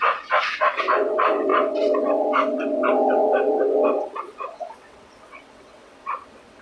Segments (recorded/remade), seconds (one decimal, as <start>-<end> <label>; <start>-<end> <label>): 0.0-6.6 remade